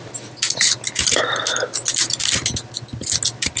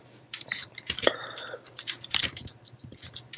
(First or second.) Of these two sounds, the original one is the first